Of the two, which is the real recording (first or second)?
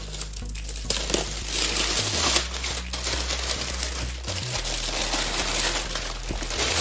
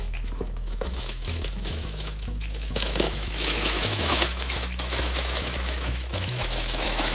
first